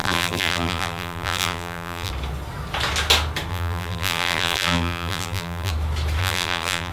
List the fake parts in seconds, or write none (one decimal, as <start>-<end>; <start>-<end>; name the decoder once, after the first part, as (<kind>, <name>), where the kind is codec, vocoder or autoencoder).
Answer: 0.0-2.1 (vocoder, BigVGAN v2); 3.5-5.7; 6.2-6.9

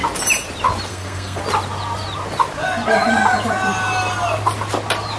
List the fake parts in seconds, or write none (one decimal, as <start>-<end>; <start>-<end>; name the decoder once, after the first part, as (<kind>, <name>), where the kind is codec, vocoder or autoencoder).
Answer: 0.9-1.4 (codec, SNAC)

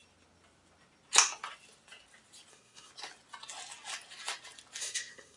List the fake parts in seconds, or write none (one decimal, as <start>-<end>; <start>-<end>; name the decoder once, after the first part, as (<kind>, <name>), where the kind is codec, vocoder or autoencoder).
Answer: 2.5-2.9 (codec, SNAC); 4.8-5.4

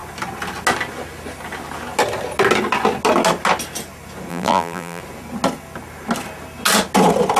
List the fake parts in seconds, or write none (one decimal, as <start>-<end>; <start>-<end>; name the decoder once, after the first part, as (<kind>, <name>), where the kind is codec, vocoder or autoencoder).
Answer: 4.3-5.0 (vocoder, BigVGAN v2)

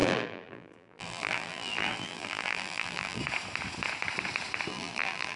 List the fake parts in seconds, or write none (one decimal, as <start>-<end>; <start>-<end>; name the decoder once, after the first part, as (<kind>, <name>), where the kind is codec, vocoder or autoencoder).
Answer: 0.0-3.2 (vocoder, BigVGAN v2); 4.7-5.4

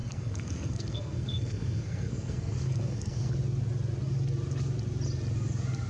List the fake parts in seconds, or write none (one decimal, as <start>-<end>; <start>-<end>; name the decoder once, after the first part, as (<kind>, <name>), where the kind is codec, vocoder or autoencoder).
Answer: 0.0-3.3 (codec, SNAC)

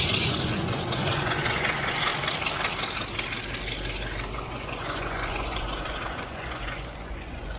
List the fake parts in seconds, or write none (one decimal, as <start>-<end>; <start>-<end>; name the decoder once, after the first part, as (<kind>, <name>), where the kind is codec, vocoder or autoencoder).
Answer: 0.0-2.1 (vocoder, Vocos); 4.3-7.6